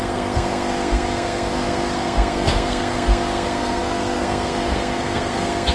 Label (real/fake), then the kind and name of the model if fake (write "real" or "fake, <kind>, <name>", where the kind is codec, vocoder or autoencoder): fake, codec, SNAC